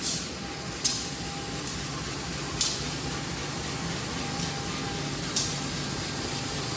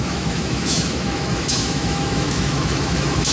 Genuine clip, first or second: first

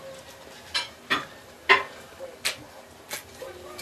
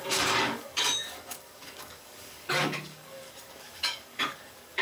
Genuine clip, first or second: first